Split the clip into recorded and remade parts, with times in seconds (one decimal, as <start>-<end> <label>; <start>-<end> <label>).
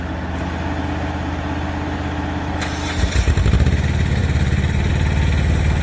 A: 0.0-5.8 recorded